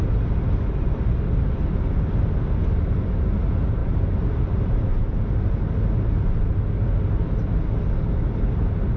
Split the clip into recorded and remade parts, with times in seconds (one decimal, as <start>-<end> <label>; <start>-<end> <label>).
0.0-9.0 recorded

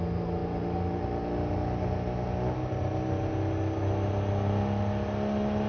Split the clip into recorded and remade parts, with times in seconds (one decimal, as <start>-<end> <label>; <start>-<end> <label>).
0.0-5.7 recorded

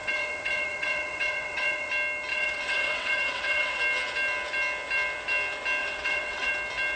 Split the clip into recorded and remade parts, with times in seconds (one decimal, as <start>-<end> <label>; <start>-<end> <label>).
0.0-1.9 remade; 1.9-2.3 recorded; 2.3-3.8 remade; 3.8-5.8 recorded; 5.8-6.5 remade; 6.5-7.0 recorded

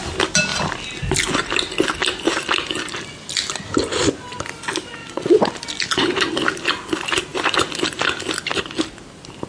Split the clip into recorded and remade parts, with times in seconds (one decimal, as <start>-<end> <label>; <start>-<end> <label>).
0.0-5.0 recorded; 5.0-5.5 remade; 5.5-9.5 recorded